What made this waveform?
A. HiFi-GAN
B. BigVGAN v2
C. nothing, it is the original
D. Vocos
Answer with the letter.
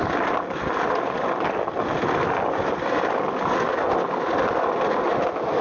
C